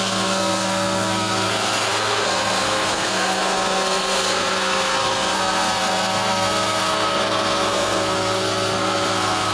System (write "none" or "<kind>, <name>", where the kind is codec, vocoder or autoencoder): codec, SNAC